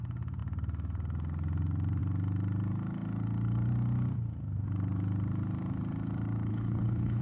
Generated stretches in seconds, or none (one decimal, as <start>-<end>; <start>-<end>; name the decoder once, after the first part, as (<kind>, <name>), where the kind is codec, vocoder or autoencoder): 6.5-7.2 (codec, HILCodec)